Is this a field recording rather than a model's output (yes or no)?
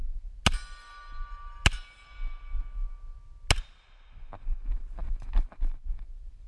yes